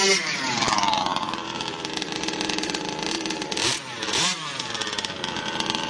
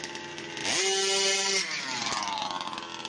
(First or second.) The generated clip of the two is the first